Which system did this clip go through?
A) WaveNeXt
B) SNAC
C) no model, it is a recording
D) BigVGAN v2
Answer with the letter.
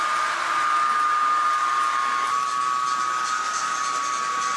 C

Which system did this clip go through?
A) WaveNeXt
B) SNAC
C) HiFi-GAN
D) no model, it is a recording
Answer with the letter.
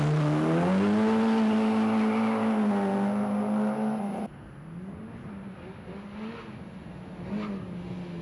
D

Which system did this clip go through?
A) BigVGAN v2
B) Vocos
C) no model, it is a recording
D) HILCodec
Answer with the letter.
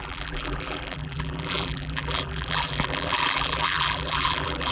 A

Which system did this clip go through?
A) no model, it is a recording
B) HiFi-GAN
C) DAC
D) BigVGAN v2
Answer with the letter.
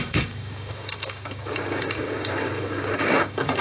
C